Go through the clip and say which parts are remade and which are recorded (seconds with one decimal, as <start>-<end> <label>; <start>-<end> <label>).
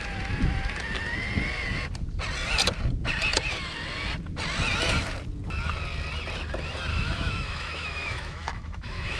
0.0-6.9 recorded; 6.9-9.2 remade